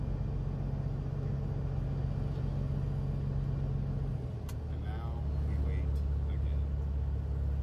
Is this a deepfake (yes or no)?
no